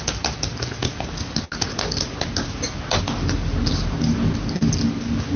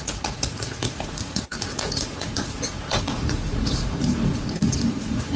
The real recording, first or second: first